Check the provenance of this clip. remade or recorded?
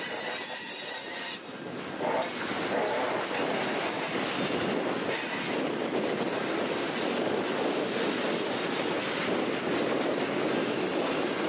recorded